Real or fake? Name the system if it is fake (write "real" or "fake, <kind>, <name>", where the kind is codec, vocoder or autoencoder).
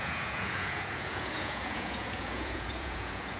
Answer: fake, vocoder, Vocos